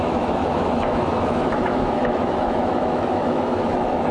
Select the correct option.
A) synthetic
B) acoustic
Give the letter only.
A